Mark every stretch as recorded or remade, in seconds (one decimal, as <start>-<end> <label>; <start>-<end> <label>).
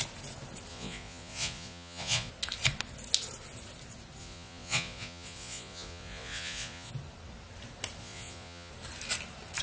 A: 0.0-0.7 recorded; 0.7-2.3 remade; 2.3-4.2 recorded; 4.2-6.9 remade; 6.9-8.0 recorded; 8.0-8.7 remade; 8.7-9.6 recorded